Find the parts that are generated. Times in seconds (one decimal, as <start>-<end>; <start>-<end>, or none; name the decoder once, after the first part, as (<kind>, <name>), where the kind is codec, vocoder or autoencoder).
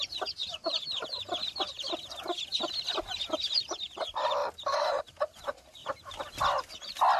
0.4-1.0 (vocoder, BigVGAN v2); 4.4-5.0